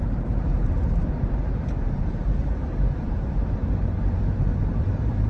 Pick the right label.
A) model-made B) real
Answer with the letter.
A